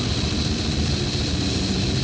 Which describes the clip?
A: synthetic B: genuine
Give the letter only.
B